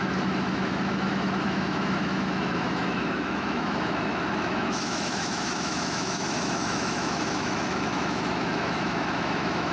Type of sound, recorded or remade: remade